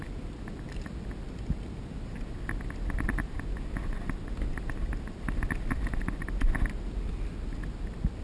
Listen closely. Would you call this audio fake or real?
real